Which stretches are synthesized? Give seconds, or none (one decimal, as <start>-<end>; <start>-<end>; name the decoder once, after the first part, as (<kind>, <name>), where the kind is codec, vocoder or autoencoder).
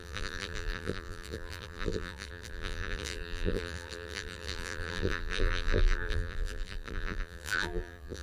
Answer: 0.0-8.2 (vocoder, BigVGAN v2)